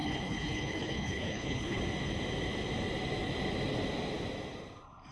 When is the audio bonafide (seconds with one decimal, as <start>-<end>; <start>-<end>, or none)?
1.8-5.1